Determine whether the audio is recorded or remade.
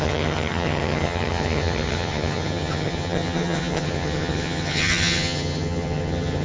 remade